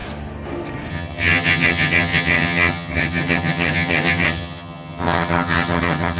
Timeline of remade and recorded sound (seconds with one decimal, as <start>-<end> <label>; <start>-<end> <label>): 0.0-0.9 recorded; 0.9-6.2 remade